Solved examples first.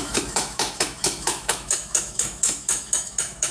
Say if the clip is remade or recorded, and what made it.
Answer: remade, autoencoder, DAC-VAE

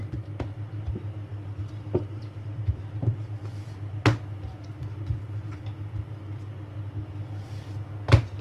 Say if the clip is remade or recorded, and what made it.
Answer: recorded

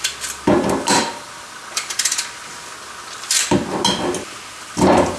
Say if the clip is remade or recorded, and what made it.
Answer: recorded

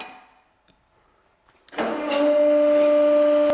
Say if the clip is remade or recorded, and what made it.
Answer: recorded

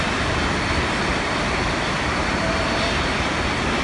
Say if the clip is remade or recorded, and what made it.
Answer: recorded